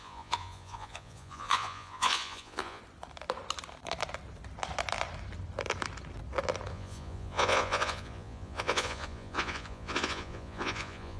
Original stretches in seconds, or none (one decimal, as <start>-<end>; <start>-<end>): 2.8-6.7